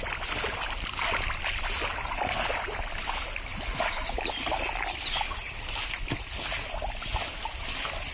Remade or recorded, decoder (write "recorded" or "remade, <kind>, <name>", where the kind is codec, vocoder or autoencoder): recorded